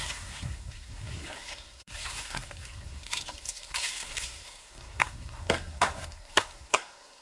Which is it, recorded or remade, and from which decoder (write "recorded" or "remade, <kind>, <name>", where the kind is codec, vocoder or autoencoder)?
remade, codec, SNAC